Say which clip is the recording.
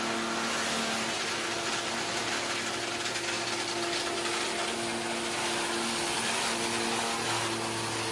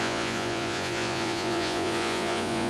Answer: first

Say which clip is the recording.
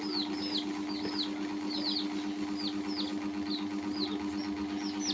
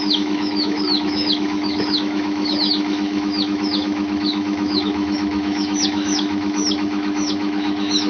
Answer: first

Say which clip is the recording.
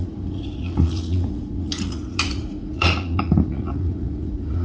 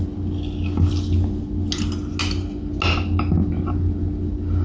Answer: second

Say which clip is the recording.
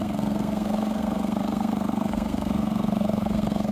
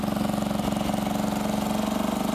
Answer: second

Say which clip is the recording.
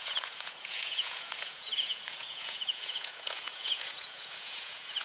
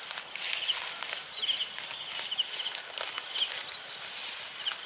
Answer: second